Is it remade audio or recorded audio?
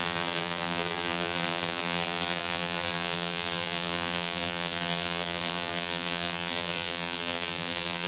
remade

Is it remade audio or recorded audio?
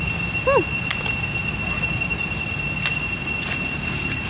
recorded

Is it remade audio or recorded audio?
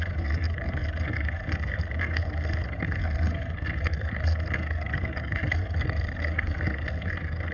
remade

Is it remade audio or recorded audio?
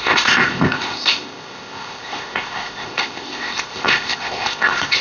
remade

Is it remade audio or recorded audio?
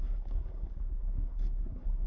remade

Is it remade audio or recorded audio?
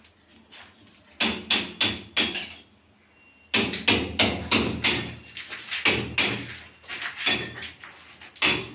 recorded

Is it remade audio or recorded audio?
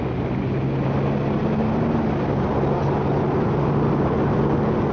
recorded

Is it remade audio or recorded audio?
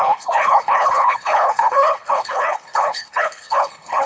remade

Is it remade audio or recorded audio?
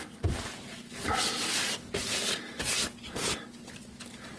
recorded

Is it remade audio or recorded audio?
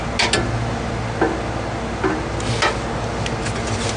recorded